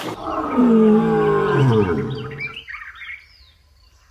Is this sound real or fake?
real